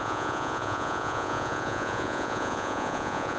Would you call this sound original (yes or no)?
no